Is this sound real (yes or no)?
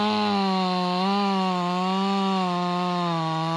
yes